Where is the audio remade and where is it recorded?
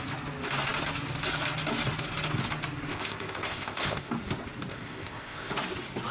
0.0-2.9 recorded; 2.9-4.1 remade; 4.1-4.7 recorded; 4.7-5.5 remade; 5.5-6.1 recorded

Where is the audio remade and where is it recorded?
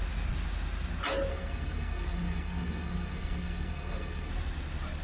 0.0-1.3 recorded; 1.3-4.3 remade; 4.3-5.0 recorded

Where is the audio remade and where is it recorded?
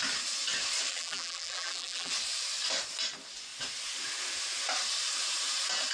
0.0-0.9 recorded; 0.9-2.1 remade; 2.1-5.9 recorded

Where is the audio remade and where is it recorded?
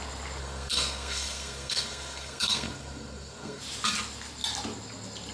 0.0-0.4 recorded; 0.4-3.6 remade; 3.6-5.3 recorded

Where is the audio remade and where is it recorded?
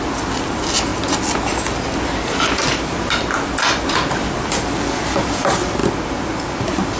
0.0-7.0 recorded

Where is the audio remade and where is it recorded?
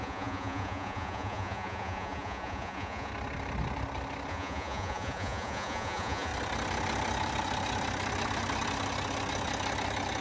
0.0-3.1 remade; 3.1-4.3 recorded; 4.3-6.3 remade; 6.3-10.2 recorded